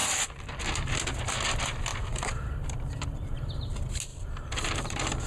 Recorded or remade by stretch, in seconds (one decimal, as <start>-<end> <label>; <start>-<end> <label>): 0.0-0.6 remade; 0.6-1.9 recorded; 1.9-3.5 remade; 3.5-4.1 recorded; 4.1-5.3 remade